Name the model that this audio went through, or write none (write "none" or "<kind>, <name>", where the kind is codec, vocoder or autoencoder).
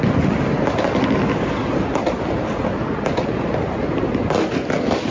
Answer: none